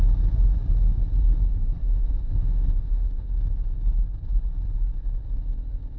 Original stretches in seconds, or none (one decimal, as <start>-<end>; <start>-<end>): 0.0-1.8; 3.3-6.0